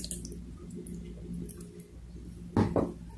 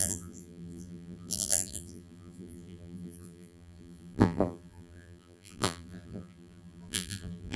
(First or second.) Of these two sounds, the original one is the first